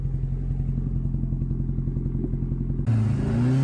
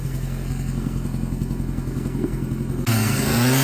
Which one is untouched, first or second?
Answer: first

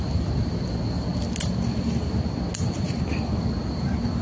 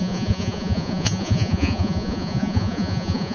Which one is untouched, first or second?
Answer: first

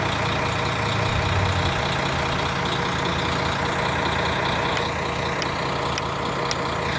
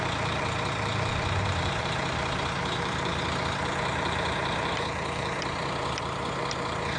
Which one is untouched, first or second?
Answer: first